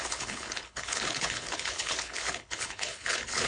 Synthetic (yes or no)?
yes